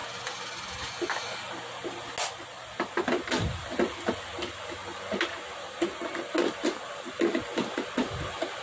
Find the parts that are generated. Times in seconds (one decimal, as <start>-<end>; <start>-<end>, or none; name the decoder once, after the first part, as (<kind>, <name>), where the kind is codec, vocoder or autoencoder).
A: none